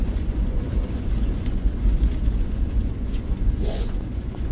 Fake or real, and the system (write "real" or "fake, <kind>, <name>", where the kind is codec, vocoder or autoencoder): fake, vocoder, Vocos